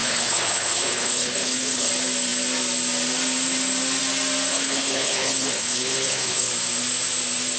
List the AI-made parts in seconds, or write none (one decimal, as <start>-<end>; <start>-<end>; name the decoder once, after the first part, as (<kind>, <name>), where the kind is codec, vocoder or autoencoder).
0.0-1.9 (codec, HILCodec); 4.5-6.5